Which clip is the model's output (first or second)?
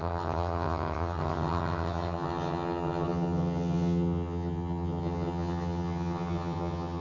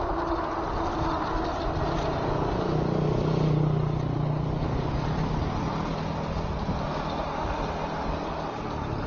first